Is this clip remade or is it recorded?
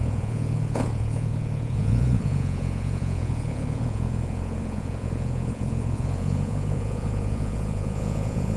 remade